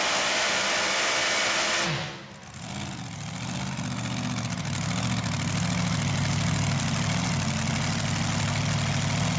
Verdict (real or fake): real